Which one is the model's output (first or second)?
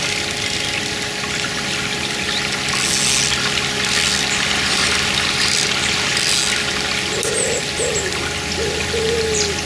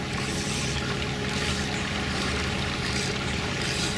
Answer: second